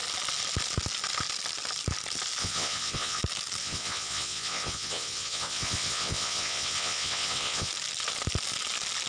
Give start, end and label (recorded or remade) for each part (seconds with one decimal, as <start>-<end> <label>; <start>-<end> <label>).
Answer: 0.0-2.4 recorded; 2.4-3.2 remade; 3.2-3.6 recorded; 3.6-7.7 remade; 7.7-9.1 recorded